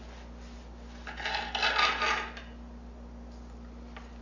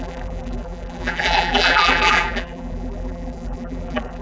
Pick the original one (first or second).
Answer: first